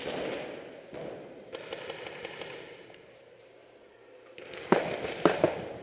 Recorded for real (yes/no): yes